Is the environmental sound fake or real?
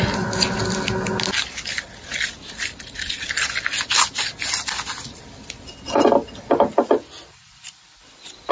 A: real